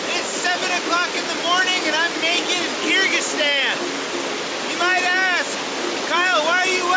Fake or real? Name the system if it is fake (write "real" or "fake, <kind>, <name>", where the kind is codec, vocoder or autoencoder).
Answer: real